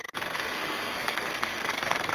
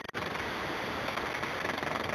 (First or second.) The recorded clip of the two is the second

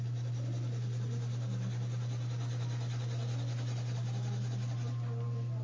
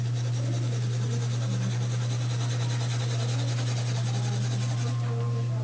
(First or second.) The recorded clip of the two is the first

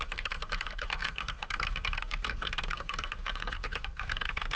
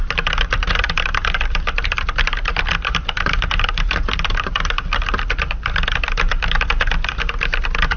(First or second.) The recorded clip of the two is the second